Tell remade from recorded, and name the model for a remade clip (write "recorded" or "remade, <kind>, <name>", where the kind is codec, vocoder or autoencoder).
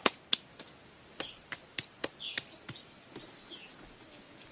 recorded